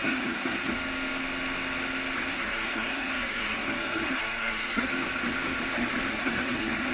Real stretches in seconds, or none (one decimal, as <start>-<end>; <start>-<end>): 0.7-2.3; 4.9-6.1